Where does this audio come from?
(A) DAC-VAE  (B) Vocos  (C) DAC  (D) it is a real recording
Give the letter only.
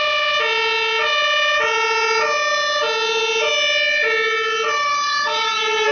D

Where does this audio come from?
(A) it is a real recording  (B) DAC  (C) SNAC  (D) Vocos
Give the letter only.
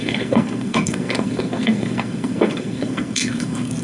C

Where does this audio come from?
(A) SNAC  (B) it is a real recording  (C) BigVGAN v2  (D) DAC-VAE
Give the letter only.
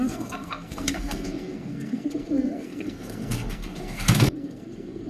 A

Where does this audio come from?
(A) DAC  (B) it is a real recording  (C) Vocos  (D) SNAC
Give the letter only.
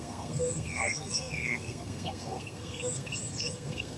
D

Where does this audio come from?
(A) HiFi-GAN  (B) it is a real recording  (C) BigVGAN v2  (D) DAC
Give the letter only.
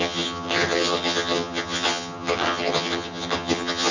A